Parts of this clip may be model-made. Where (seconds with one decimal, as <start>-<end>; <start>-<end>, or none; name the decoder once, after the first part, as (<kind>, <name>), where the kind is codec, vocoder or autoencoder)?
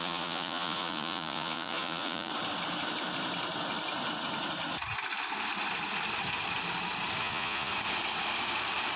0.0-2.3 (vocoder, Vocos); 7.2-7.7